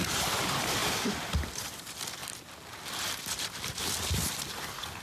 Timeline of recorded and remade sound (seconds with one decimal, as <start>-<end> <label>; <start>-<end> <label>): 0.0-2.2 remade; 2.2-3.4 recorded; 3.4-5.0 remade

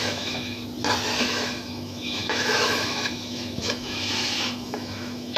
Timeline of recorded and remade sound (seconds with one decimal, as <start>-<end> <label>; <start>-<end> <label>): 0.0-0.6 remade; 0.6-1.2 recorded; 1.2-5.4 remade